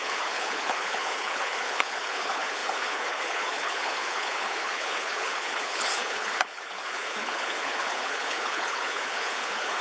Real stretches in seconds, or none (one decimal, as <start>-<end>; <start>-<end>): none